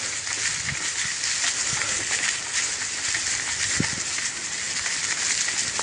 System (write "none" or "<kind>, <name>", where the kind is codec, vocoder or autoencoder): none